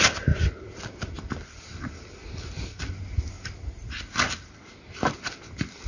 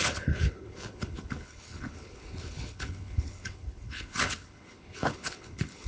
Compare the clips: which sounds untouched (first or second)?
first